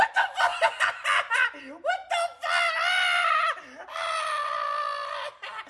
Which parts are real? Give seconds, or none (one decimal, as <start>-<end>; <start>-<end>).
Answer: 0.0-5.7